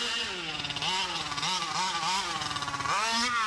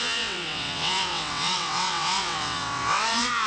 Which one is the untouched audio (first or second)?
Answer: first